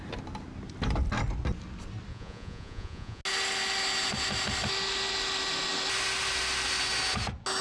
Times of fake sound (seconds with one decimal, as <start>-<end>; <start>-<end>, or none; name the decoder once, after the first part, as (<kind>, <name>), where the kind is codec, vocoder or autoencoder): 2.1-3.2 (vocoder, Vocos)